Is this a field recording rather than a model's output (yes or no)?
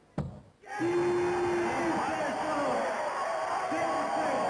yes